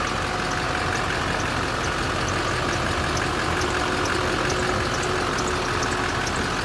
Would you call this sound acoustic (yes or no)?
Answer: yes